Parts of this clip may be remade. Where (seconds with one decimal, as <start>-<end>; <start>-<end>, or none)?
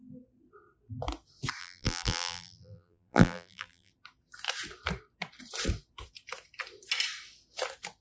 1.6-3.9